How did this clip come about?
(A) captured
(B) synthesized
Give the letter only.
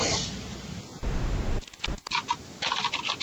A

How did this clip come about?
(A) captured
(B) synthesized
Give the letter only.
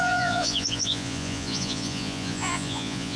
B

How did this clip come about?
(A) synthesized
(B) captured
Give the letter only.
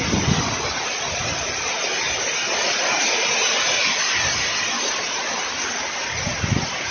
B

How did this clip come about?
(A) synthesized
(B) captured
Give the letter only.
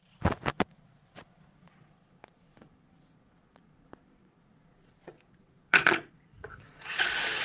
A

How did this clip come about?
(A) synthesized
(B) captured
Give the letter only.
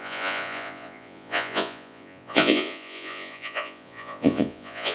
A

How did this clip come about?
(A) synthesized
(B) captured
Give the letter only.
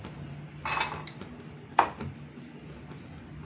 B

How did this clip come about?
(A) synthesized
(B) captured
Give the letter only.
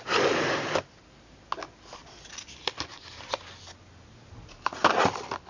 B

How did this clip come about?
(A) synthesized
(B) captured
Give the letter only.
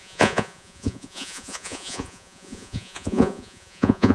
A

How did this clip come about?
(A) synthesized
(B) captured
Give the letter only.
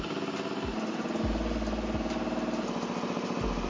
B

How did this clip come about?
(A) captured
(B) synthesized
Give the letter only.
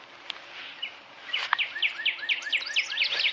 A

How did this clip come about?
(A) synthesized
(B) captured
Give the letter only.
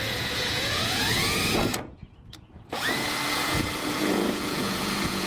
A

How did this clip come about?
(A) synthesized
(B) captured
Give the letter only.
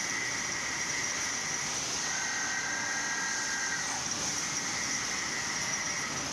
B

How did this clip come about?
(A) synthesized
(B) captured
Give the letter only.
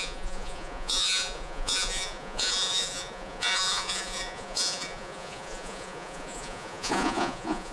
A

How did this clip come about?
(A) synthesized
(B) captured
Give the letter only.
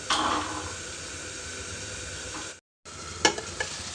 B